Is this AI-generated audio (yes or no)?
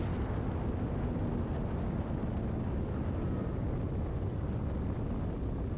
no